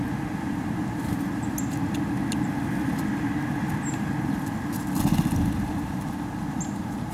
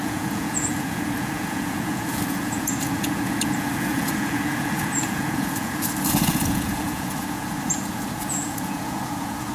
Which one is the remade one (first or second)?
second